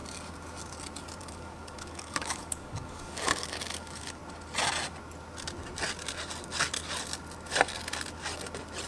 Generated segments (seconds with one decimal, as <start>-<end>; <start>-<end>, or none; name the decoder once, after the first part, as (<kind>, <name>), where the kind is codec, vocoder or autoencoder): 1.2-4.2 (codec, DAC)